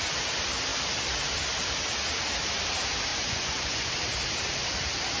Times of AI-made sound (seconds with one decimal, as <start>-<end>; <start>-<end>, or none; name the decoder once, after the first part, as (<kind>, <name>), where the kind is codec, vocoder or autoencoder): 3.1-3.9 (vocoder, Vocos)